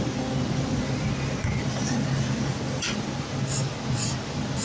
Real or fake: real